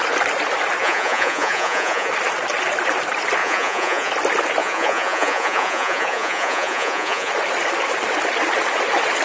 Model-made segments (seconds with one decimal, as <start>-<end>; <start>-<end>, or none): 0.8-2.1; 3.4-4.1; 4.6-7.3

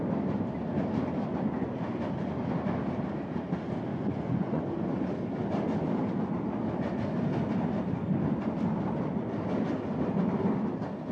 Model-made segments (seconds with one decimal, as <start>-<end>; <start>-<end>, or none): 3.9-4.6

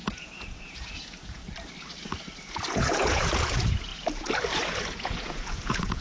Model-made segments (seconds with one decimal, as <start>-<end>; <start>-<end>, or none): 0.0-1.4; 2.4-6.0

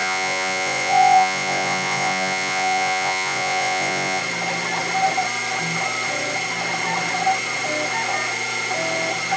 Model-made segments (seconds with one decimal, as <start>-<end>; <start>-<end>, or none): 0.0-4.2

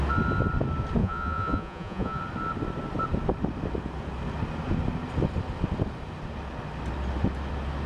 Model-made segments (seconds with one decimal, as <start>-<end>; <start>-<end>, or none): 1.0-2.2

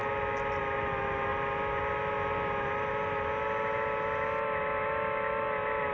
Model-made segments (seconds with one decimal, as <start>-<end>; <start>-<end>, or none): none